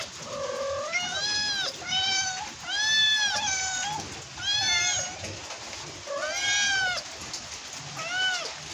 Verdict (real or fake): real